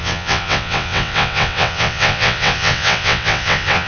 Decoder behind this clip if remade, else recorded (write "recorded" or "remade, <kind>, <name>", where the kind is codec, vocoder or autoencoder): remade, vocoder, WaveNeXt